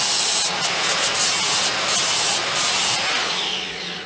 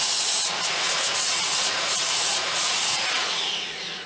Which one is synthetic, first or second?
second